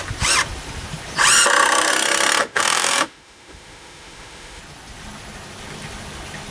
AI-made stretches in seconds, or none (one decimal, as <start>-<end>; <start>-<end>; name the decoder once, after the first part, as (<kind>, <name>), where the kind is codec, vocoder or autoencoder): 2.4-4.6 (autoencoder, DAC-VAE)